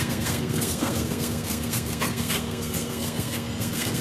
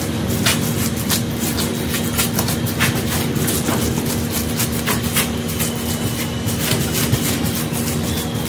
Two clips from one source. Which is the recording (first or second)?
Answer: second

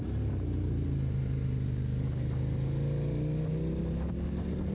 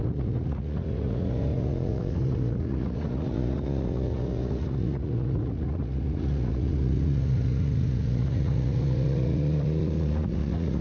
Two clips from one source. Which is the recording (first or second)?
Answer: first